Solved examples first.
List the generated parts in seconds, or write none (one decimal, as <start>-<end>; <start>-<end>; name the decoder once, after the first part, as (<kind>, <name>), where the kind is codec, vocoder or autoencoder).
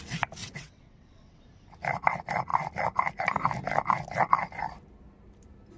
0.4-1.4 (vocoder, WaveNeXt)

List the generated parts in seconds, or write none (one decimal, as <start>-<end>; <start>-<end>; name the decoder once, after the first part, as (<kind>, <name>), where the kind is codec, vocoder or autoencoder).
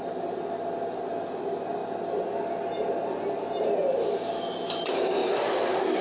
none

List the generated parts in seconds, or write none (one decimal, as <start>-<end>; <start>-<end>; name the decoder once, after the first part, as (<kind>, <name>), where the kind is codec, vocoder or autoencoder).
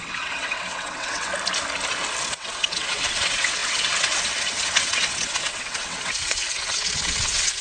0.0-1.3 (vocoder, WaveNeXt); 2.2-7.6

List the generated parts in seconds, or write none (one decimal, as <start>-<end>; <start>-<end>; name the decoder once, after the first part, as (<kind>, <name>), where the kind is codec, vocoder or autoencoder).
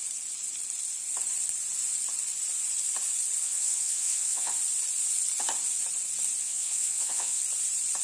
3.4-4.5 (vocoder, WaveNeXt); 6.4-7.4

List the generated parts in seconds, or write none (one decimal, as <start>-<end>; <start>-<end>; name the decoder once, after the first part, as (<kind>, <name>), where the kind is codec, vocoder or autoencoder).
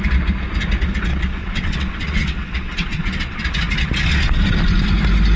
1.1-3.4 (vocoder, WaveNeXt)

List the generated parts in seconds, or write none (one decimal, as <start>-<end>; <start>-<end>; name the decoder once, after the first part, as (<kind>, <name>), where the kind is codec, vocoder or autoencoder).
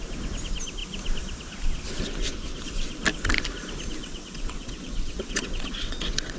4.0-6.4 (vocoder, WaveNeXt)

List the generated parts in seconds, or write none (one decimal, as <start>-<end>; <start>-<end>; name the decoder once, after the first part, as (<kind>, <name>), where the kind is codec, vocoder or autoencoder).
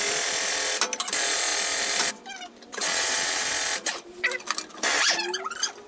2.7-3.5 (vocoder, WaveNeXt)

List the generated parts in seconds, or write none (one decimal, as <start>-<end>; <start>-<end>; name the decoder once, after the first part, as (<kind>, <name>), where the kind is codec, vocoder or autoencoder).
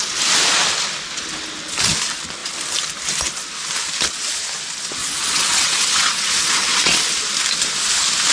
5.0-7.1 (vocoder, WaveNeXt)